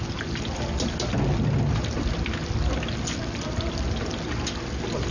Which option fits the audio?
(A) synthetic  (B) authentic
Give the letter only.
B